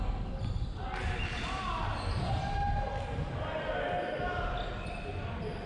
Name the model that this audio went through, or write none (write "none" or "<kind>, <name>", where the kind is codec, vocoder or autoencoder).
none